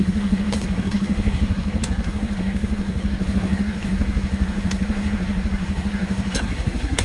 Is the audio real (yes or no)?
no